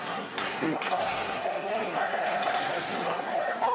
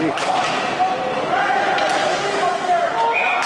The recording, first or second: second